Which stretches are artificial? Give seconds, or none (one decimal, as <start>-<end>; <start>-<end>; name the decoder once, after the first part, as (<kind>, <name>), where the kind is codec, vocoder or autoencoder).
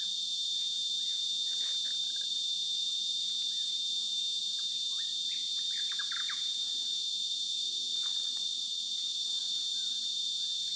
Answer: 7.9-8.8 (vocoder, Vocos)